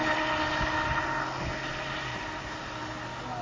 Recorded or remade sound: recorded